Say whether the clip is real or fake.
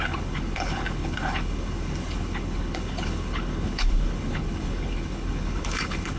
fake